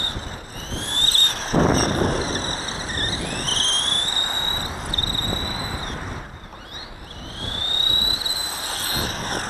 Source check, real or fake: real